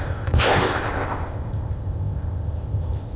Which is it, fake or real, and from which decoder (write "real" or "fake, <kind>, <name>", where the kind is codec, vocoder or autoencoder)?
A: fake, codec, ZipCodec